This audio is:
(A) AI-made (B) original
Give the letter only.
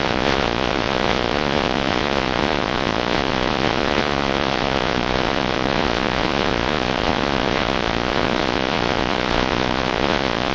A